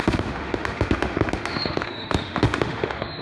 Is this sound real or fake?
fake